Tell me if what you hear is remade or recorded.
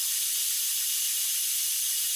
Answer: recorded